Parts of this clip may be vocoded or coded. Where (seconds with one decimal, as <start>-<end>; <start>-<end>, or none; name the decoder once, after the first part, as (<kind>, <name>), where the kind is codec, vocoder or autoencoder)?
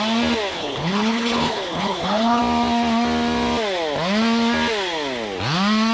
0.5-2.4 (codec, HILCodec)